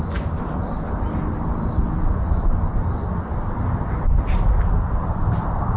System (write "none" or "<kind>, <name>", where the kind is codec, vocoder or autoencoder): none